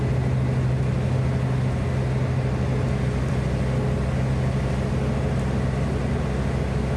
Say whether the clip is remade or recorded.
recorded